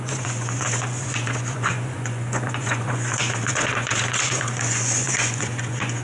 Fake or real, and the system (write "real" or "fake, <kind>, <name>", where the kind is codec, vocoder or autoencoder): fake, vocoder, Vocos